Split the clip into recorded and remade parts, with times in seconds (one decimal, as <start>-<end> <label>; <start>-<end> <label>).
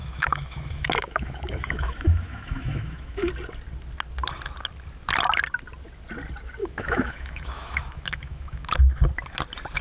0.0-3.3 remade; 3.3-6.6 recorded; 6.6-8.7 remade; 8.7-9.8 recorded